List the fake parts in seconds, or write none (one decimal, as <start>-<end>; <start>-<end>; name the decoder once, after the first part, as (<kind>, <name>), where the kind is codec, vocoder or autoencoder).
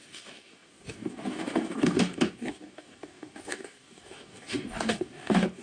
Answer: 0.0-5.6 (codec, DAC)